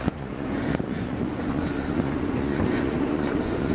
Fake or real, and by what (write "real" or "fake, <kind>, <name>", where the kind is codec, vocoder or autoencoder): fake, vocoder, Vocos